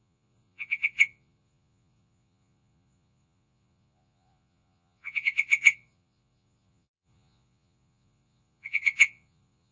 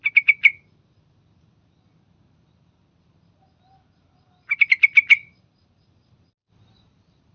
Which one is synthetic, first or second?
first